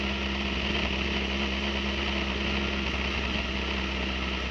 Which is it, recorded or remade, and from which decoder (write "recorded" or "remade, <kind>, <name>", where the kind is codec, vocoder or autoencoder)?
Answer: recorded